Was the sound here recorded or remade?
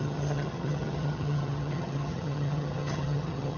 remade